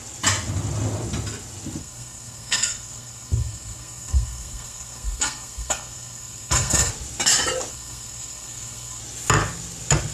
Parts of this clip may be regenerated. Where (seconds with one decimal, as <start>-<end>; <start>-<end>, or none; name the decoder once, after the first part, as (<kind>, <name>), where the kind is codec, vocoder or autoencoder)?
1.8-6.9 (codec, SNAC); 7.7-9.0